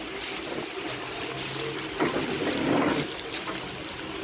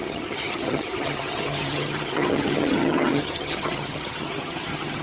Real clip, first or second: first